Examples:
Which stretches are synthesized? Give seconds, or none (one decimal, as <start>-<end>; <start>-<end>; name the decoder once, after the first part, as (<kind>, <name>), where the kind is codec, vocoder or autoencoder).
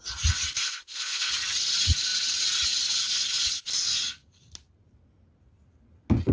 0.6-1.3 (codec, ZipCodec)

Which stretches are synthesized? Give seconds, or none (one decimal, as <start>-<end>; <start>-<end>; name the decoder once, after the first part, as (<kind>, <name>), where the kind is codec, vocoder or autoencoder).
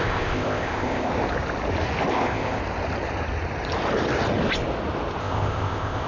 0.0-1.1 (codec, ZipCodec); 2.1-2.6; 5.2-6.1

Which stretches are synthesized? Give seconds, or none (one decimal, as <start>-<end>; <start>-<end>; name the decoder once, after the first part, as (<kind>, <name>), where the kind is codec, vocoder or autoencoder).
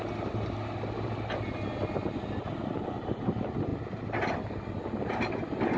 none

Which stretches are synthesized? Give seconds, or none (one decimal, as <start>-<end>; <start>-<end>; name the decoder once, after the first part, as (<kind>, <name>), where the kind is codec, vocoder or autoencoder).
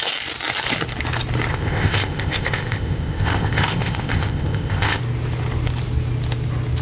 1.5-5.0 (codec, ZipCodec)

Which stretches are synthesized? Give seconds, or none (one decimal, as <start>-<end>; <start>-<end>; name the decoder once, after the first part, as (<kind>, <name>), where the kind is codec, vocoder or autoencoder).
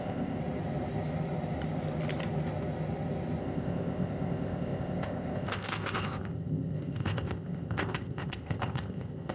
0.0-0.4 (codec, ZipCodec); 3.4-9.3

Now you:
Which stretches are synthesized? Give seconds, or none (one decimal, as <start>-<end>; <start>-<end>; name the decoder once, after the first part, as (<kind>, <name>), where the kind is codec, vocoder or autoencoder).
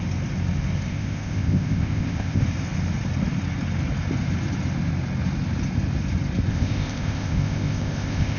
0.9-2.4 (codec, ZipCodec); 6.5-8.4